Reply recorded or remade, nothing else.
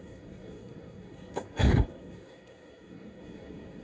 remade